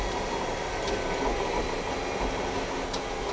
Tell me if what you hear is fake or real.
real